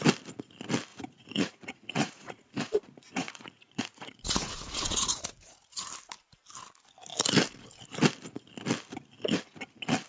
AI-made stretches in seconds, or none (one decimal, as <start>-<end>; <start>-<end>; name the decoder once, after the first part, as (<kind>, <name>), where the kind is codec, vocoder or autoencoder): 0.9-5.9 (vocoder, Vocos)